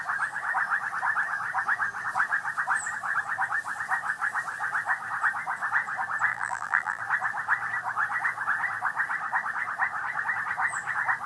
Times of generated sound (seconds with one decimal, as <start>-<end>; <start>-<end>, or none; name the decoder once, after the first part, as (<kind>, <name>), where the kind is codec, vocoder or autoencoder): 6.3-7.0 (vocoder, BigVGAN v2)